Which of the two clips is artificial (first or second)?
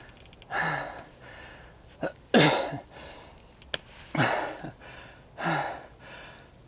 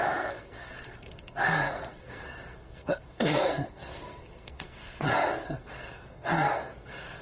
second